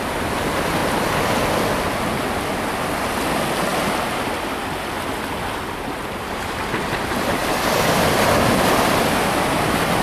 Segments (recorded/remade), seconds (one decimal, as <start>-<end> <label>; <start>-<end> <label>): 0.0-10.0 recorded